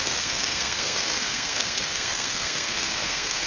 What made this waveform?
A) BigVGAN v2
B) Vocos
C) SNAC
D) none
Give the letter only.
C